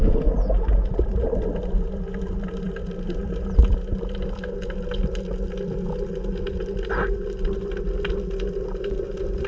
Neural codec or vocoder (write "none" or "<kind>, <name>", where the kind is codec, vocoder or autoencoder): none